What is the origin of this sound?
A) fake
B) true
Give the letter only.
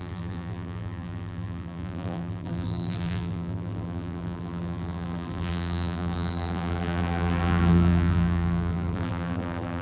A